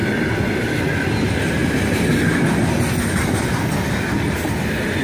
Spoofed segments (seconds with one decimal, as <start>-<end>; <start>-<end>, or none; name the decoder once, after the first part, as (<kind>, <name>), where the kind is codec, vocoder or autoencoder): none